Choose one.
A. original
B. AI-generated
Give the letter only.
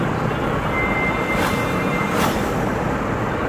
A